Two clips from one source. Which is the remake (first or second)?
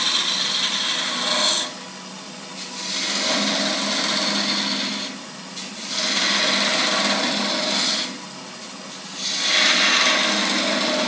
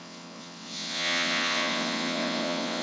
second